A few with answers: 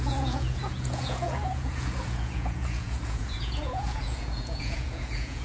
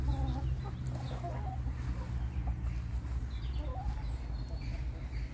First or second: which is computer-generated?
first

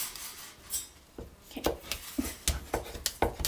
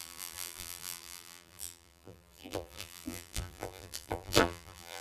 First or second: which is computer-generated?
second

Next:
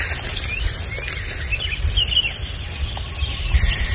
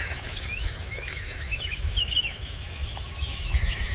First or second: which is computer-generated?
second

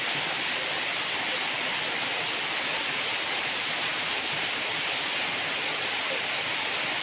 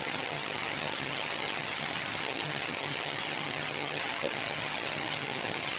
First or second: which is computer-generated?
second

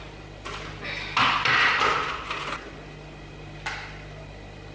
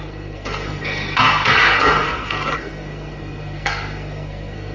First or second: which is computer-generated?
second